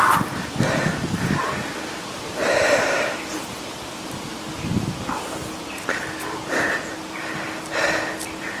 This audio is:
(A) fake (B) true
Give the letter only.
B